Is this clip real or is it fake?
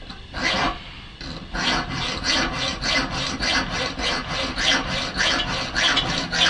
real